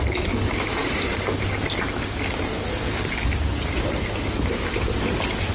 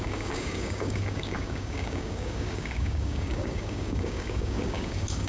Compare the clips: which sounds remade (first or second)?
second